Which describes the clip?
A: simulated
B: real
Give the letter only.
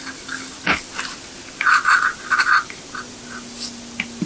B